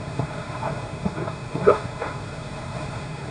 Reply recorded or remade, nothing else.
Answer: remade